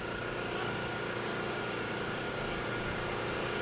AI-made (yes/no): yes